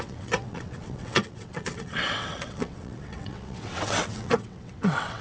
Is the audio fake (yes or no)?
yes